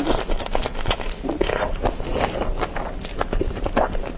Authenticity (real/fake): real